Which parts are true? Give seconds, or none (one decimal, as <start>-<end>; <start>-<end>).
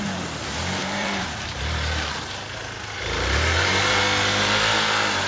0.0-0.8; 4.0-5.3